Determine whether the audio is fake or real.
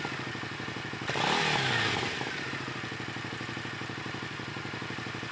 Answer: real